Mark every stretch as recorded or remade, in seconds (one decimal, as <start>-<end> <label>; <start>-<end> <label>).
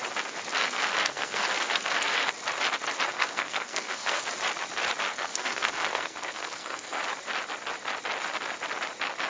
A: 0.0-0.6 recorded; 0.6-2.3 remade; 2.3-3.1 recorded; 3.1-4.3 remade; 4.3-5.1 recorded; 5.1-7.0 remade; 7.0-9.3 recorded